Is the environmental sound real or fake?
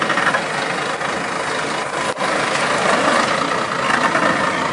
real